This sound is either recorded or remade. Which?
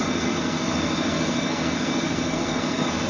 remade